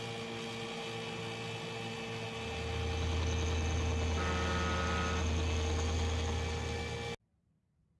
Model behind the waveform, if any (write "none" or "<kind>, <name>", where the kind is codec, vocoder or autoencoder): none